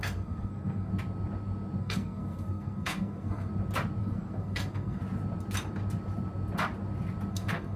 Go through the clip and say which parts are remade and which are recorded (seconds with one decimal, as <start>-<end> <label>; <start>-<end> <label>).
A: 0.0-0.9 remade; 0.9-1.8 recorded; 1.8-3.5 remade; 3.5-4.0 recorded; 4.0-5.0 remade; 5.0-7.3 recorded; 7.3-7.8 remade